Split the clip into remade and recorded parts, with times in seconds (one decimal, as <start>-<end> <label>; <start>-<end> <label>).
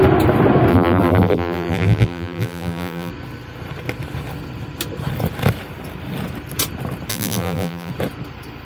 0.0-0.7 recorded; 0.7-3.1 remade; 3.1-7.1 recorded; 7.1-7.9 remade; 7.9-8.6 recorded